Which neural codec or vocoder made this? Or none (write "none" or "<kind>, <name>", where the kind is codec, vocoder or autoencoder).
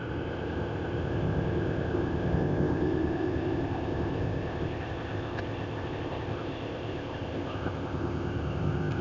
codec, ZipCodec